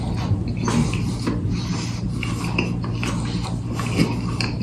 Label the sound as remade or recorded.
recorded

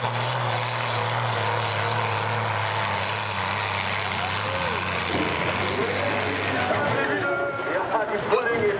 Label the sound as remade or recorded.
recorded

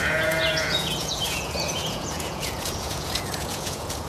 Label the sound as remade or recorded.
remade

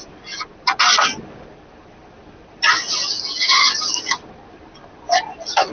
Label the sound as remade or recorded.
recorded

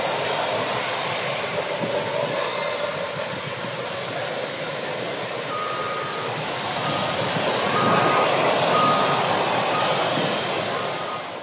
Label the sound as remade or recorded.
recorded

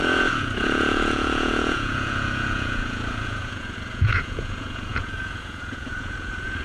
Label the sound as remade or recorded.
remade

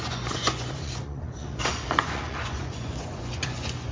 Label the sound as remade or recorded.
remade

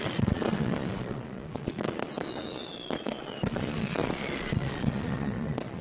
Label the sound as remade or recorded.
remade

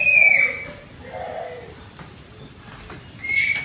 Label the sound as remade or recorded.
recorded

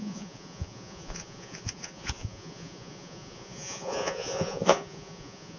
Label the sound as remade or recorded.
remade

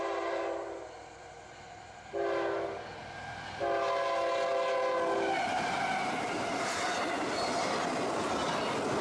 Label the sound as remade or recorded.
recorded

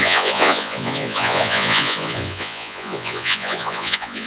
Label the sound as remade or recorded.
remade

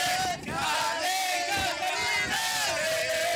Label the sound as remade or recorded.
recorded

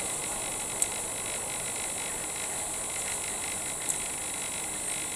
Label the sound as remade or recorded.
recorded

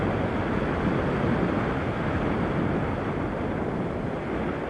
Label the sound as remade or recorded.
recorded